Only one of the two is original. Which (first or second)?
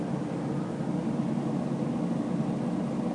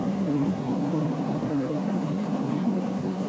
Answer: first